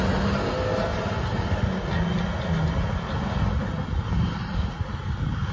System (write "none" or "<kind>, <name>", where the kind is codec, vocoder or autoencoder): none